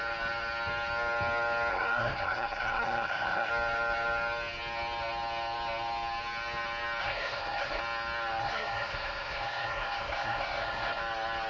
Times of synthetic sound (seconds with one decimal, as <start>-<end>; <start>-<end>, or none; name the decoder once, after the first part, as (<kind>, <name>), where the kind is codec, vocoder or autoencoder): 1.7-3.5 (codec, SNAC); 7.0-7.8; 8.4-11.0